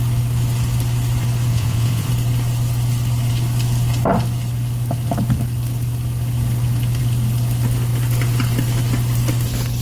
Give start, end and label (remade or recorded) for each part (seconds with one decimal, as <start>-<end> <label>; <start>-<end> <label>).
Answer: 0.0-1.5 recorded; 1.5-2.1 remade; 2.1-9.8 recorded